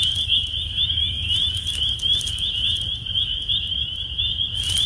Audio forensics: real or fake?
fake